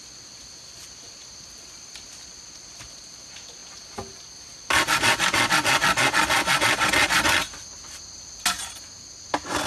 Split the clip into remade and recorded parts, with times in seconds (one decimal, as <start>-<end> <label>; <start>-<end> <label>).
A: 0.0-9.7 recorded